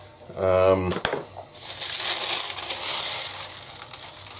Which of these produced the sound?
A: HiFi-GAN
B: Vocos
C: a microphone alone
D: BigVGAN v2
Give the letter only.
C